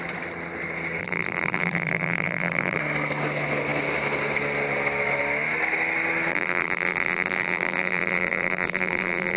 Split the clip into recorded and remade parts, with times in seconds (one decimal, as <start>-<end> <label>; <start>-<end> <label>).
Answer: 0.0-1.0 recorded; 1.0-2.8 remade; 2.8-6.3 recorded; 6.3-9.4 remade